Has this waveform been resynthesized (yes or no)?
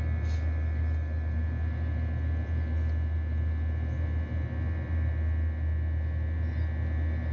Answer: no